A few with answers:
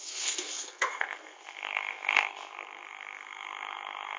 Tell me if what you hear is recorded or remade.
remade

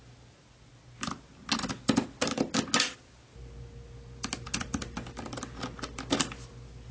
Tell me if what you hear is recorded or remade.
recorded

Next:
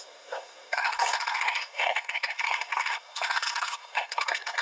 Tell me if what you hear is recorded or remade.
remade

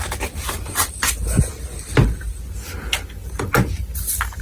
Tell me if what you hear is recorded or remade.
recorded